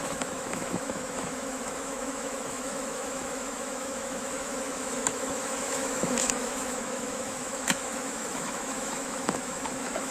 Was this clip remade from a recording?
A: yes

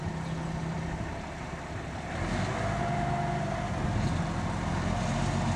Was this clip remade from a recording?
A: no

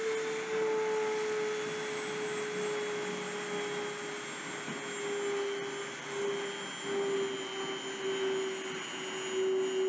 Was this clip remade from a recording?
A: no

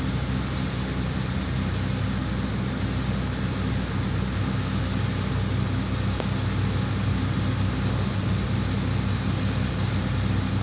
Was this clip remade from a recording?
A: no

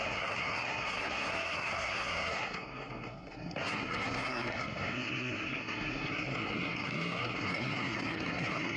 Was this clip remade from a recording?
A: yes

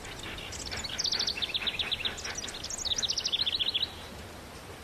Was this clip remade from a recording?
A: no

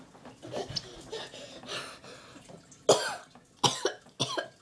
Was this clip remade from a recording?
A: no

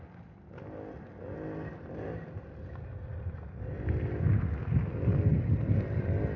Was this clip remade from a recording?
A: no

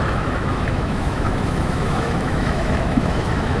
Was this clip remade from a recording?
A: yes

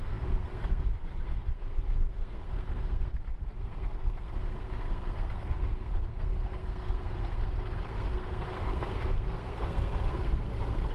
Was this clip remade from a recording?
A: yes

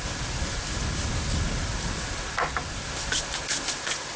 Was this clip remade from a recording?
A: no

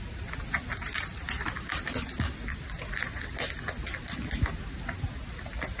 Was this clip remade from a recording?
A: no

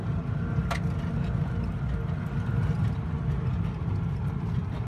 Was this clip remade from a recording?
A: no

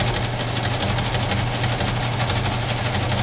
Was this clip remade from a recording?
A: no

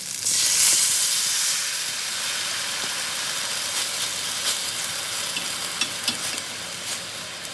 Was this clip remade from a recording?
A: no